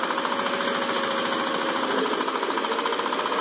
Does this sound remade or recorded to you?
recorded